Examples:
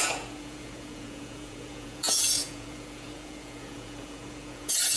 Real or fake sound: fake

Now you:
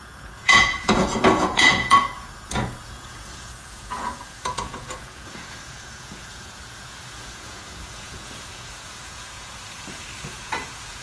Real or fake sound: fake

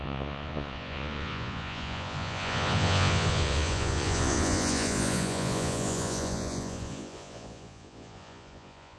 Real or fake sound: fake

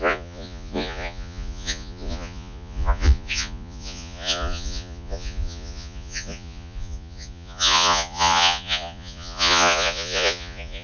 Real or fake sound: fake